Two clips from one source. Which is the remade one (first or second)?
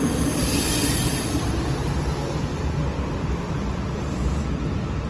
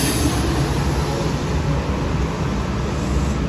first